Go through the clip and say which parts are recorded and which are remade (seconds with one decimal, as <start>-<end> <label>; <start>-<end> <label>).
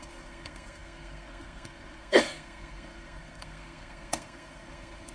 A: 0.0-5.1 remade